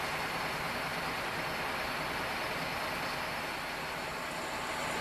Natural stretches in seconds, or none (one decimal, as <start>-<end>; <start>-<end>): 0.0-5.0